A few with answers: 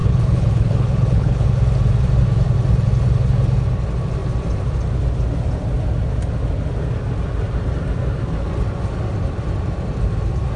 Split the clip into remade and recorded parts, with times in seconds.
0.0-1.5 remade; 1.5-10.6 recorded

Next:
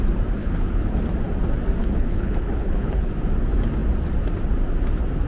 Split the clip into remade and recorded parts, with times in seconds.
0.0-0.4 recorded; 0.4-1.0 remade; 1.0-1.8 recorded; 1.8-3.1 remade; 3.1-5.3 recorded

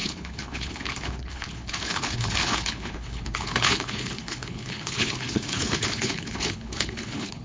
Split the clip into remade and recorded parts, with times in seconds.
0.0-7.4 remade

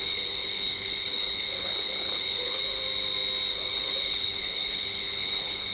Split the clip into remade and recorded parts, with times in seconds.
0.0-2.8 remade; 2.8-3.5 recorded; 3.5-5.7 remade

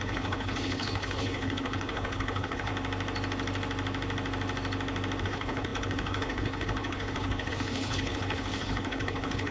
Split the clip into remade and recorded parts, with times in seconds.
0.0-2.7 remade; 2.7-5.2 recorded; 5.2-9.5 remade